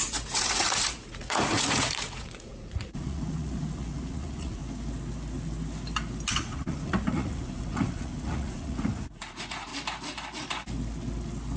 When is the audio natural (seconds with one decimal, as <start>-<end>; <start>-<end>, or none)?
4.6-6.3; 9.7-11.6